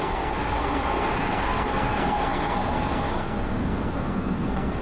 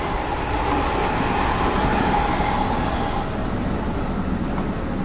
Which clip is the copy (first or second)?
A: first